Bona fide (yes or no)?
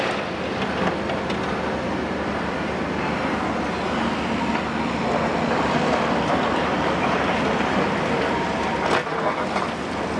yes